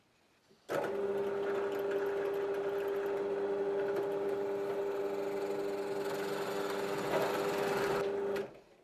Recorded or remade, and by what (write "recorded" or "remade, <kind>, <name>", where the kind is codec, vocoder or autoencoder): recorded